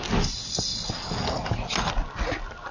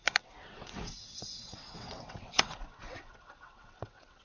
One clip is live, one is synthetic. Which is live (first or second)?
first